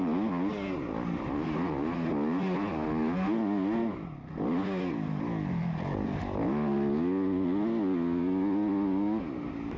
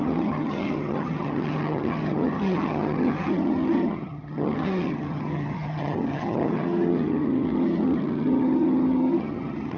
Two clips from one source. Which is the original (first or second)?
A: first